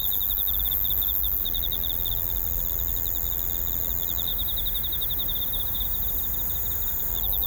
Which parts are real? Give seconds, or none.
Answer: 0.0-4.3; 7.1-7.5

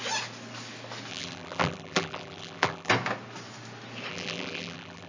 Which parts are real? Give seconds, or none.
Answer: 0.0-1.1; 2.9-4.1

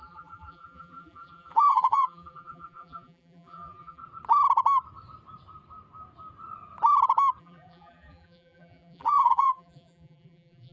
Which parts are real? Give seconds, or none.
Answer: 4.0-7.4